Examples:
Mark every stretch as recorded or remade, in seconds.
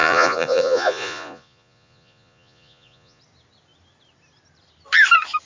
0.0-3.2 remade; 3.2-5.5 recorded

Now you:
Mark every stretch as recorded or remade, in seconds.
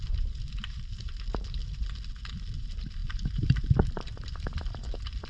0.0-1.6 remade; 1.6-2.3 recorded; 2.3-5.3 remade